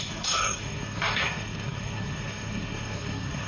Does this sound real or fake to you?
fake